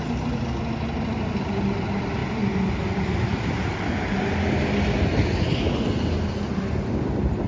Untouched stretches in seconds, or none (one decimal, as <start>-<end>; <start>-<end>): 0.0-7.5